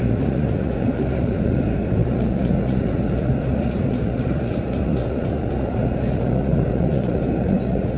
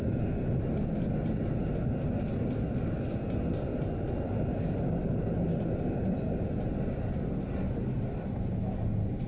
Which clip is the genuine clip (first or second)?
second